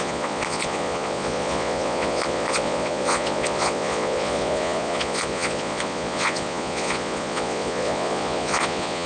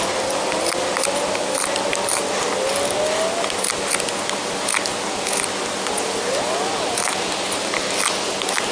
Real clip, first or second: second